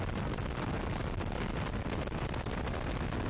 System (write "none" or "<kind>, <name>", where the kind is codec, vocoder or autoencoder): none